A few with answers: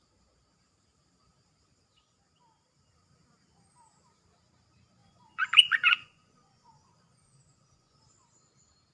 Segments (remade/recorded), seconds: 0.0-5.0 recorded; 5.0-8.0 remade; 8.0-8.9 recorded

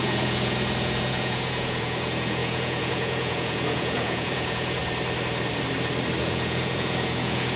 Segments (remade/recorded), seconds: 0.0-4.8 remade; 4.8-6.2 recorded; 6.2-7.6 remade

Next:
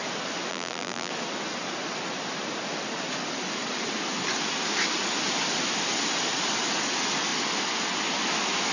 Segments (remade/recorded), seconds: 0.0-0.5 recorded; 0.5-1.1 remade; 1.1-8.7 recorded